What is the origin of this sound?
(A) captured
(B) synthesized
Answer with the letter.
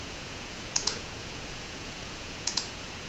B